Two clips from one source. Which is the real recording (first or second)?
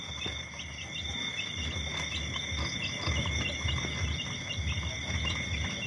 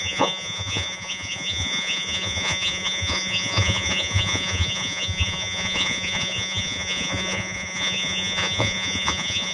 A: first